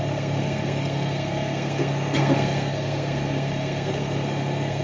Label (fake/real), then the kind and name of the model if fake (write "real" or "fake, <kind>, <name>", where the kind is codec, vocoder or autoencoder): fake, codec, SNAC